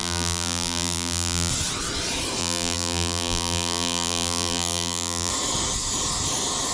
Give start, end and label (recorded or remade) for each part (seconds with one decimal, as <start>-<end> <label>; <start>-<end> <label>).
0.0-1.5 remade; 1.5-2.4 recorded; 2.4-5.3 remade; 5.3-6.7 recorded